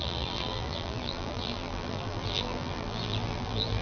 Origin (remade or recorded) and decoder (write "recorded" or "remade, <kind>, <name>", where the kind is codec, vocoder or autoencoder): remade, vocoder, BigVGAN v2